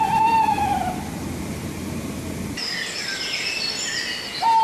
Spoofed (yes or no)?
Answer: no